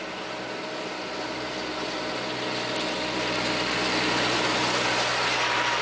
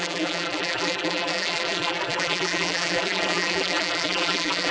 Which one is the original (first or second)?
first